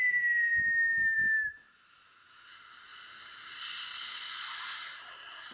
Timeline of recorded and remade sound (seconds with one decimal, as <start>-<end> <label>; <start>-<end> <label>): 0.0-0.5 recorded; 0.5-2.5 remade; 2.5-5.5 recorded